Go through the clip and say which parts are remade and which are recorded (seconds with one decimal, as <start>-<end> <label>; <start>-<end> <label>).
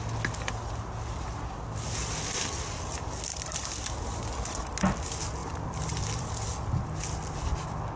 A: 0.0-5.4 recorded; 5.4-6.3 remade; 6.3-8.0 recorded